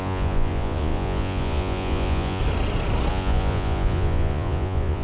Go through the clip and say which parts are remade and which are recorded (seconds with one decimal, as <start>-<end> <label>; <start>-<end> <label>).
0.0-2.4 remade; 2.4-3.1 recorded; 3.1-5.0 remade